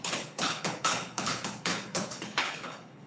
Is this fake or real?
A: fake